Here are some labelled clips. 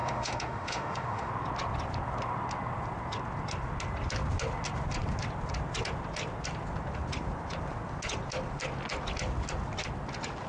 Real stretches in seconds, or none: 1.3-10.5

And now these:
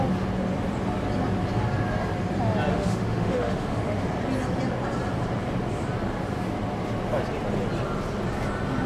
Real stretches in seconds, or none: 0.0-2.7; 4.0-8.9